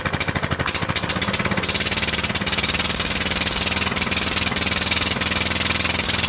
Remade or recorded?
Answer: recorded